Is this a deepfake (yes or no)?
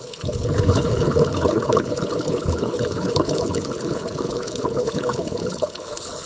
yes